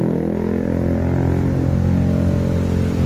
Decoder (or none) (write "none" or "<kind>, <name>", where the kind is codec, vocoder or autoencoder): none